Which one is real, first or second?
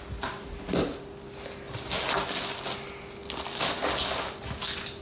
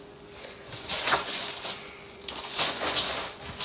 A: first